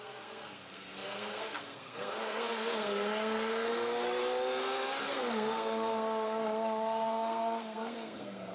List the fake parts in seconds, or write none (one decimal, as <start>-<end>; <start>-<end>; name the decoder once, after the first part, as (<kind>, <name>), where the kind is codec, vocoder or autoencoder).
0.0-4.2 (codec, SNAC); 5.1-8.5